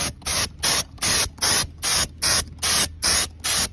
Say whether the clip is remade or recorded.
recorded